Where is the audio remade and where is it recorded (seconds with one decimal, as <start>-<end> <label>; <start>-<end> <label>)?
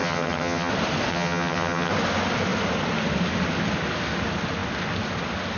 0.0-0.7 remade; 0.7-1.1 recorded; 1.1-1.9 remade; 1.9-5.6 recorded